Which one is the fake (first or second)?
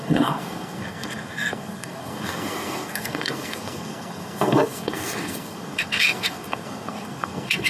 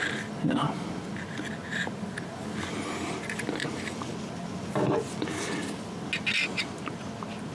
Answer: first